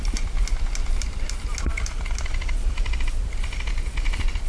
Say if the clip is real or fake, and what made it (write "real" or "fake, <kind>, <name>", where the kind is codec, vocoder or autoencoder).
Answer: real